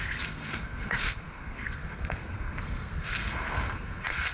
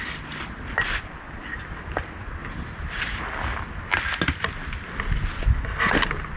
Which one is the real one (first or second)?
second